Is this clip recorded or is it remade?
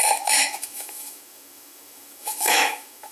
remade